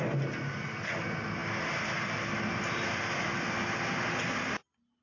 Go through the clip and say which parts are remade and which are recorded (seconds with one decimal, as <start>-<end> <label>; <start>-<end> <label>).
0.0-5.0 recorded